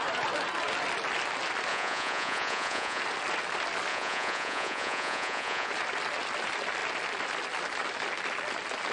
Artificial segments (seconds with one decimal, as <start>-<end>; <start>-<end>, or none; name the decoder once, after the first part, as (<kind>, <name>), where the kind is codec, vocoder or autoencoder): 1.7-3.0 (vocoder, Vocos); 3.9-5.7